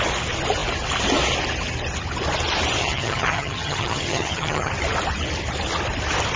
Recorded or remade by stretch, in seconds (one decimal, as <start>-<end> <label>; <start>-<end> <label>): 0.0-2.8 recorded; 2.8-4.7 remade; 4.7-6.4 recorded